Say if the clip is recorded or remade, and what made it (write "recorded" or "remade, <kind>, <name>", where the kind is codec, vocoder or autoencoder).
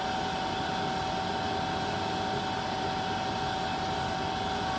recorded